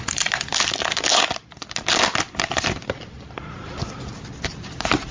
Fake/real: real